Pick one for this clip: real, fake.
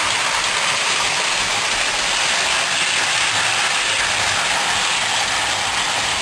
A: real